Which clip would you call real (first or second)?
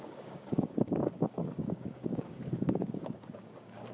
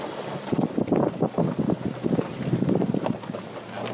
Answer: second